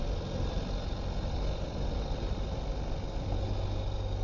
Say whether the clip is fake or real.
real